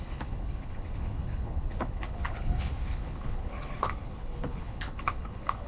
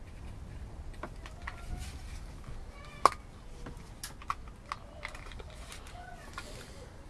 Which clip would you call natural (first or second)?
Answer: second